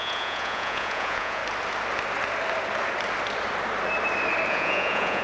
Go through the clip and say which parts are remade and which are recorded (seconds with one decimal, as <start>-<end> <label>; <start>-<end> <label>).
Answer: 0.0-1.4 remade; 1.4-4.5 recorded; 4.5-5.2 remade